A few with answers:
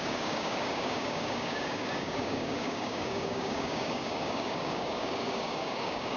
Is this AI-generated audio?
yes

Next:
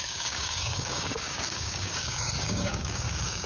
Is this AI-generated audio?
yes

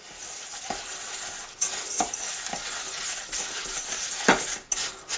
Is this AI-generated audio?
no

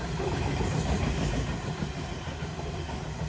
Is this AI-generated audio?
no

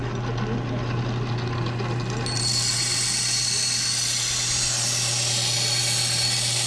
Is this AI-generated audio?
no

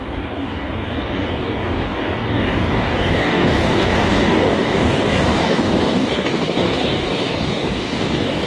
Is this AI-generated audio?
yes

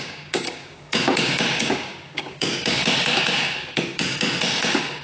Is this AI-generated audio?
yes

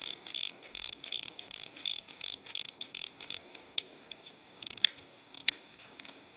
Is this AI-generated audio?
yes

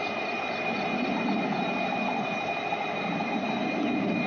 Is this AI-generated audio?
no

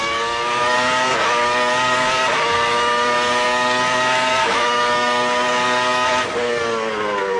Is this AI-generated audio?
yes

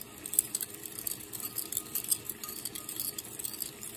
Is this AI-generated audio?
no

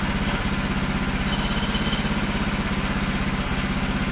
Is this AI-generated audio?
no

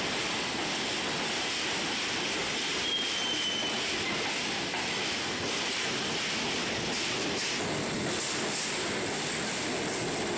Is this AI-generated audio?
no